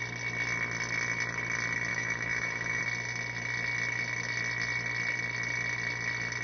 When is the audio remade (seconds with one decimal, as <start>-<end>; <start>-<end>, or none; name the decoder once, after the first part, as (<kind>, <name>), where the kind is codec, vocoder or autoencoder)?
1.9-2.8 (autoencoder, DAC-VAE)